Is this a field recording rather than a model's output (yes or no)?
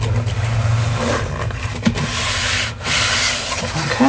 yes